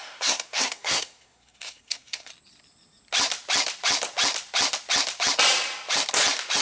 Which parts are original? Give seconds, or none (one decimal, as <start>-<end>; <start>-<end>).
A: 2.3-6.6